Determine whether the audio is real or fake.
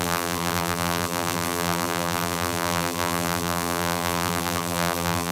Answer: fake